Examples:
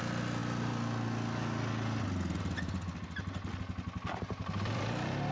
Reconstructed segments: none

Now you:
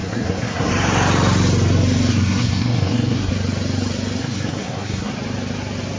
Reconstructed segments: 0.0-0.7 (codec, SNAC); 2.1-3.3; 4.2-5.1

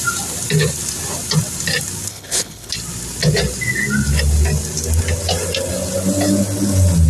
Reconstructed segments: 2.1-2.7 (codec, HILCodec)

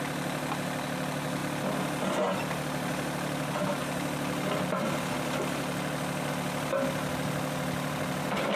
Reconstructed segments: none